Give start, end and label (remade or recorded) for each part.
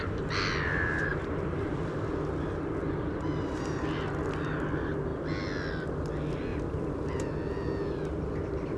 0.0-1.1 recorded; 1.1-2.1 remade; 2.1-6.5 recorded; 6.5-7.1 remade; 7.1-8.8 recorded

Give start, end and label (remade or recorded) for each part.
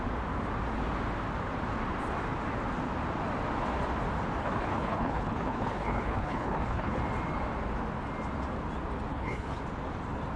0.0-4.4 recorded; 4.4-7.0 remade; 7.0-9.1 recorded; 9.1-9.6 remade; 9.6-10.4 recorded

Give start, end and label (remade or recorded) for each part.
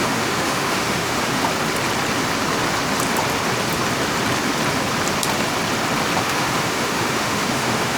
0.0-1.4 remade; 1.4-6.2 recorded; 6.2-8.0 remade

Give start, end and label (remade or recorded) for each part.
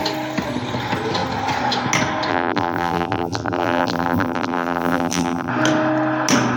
0.0-2.3 recorded; 2.3-5.5 remade; 5.5-6.6 recorded